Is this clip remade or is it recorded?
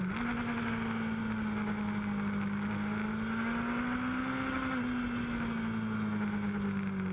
recorded